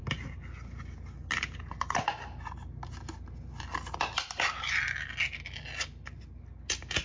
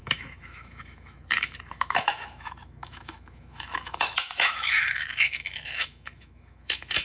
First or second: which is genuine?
first